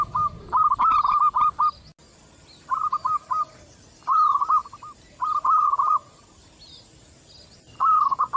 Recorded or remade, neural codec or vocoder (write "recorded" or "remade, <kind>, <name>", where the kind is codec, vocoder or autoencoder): recorded